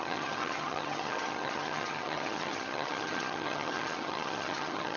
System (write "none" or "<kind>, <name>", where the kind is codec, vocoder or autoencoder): vocoder, HiFi-GAN